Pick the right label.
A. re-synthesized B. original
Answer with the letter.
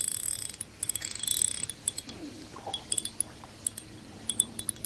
A